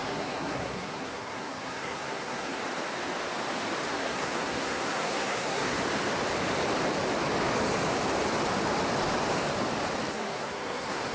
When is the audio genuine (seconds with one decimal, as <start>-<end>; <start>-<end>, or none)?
2.6-3.9; 5.8-10.1